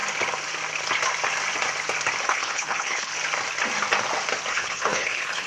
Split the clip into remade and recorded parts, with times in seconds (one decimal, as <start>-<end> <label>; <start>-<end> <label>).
0.0-2.2 recorded; 2.2-3.1 remade; 3.1-4.5 recorded; 4.5-5.5 remade